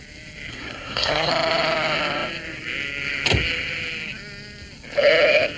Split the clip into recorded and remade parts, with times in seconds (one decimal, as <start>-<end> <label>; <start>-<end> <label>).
0.0-0.5 recorded; 0.5-1.3 remade; 1.3-5.6 recorded